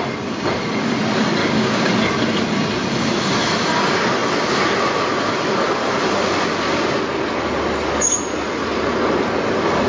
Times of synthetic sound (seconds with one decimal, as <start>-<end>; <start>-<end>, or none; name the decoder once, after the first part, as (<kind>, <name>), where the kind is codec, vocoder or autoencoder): 1.4-1.9 (codec, DAC)